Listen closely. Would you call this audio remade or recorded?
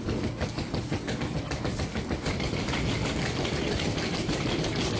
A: recorded